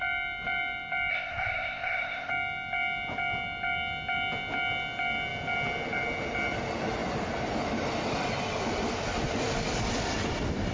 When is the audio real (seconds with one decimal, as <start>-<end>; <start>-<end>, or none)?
0.0-1.1; 2.3-10.7